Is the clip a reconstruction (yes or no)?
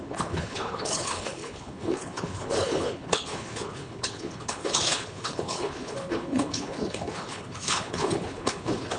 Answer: yes